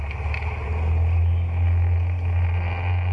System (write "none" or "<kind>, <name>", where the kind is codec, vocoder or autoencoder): none